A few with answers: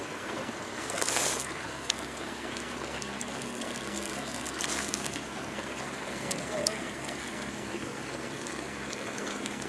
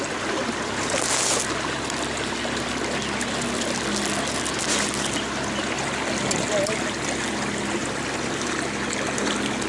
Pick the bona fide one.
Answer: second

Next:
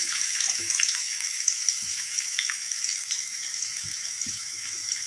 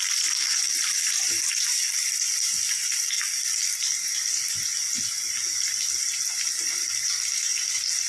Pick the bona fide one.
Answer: second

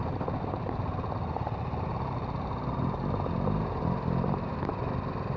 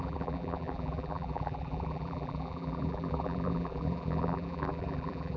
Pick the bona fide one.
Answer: first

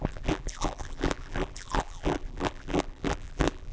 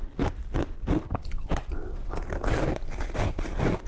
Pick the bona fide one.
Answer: second